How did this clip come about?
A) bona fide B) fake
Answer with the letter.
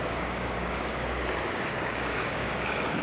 B